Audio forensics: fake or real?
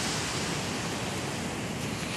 real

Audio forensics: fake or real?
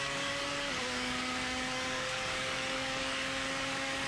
fake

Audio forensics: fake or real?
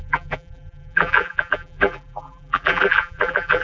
fake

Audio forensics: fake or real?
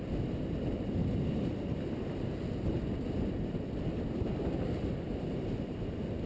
real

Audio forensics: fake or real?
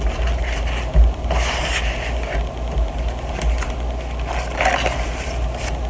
real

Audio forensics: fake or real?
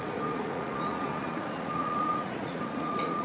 fake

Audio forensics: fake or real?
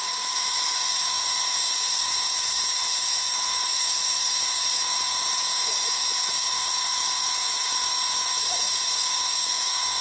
fake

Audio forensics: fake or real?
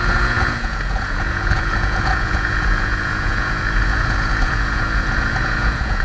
fake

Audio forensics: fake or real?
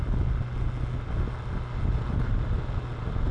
real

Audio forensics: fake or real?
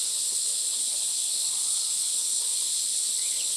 fake